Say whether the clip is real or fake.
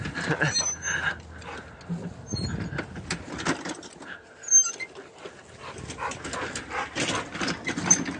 real